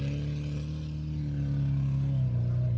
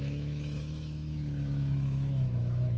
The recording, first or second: first